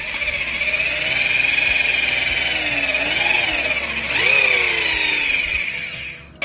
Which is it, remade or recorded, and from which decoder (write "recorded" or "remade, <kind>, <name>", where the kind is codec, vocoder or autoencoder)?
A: recorded